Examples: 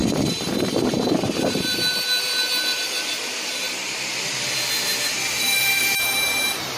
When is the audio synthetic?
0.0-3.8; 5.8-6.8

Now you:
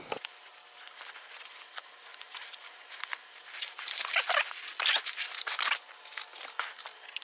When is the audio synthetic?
2.1-5.5

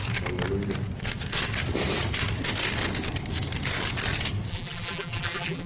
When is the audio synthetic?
4.5-5.7

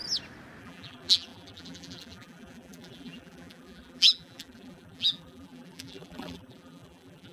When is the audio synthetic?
0.6-7.3

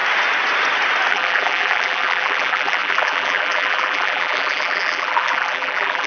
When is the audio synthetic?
1.1-6.1

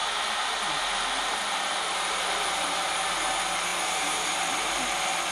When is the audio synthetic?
0.0-2.4